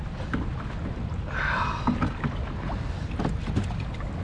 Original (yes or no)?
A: yes